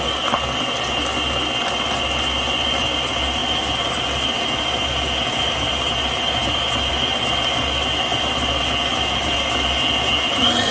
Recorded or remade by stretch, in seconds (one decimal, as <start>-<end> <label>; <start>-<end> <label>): 0.0-10.7 recorded